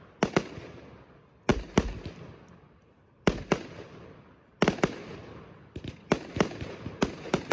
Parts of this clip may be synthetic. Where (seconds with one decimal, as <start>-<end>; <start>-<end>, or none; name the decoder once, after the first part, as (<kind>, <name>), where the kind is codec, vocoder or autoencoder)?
1.5-5.9 (vocoder, BigVGAN v2)